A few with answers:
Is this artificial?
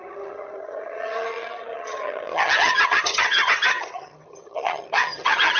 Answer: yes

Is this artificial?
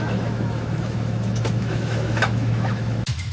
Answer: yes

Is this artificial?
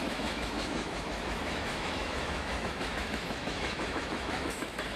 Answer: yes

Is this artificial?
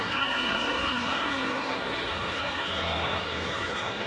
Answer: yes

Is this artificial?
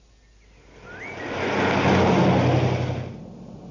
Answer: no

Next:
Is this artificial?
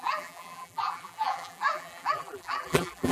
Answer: yes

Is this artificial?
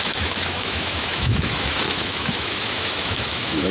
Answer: yes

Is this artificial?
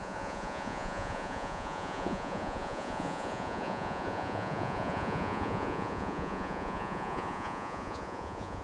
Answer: yes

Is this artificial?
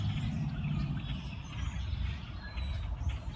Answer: no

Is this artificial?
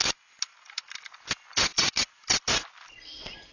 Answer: no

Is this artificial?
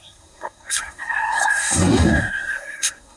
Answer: yes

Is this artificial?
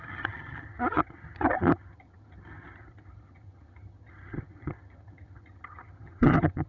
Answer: yes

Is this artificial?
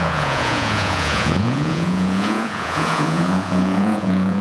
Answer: yes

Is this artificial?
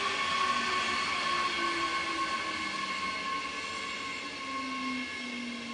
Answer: no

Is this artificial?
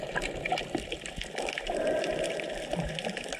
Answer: no